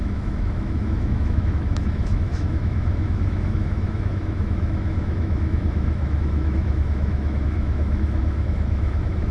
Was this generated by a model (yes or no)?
yes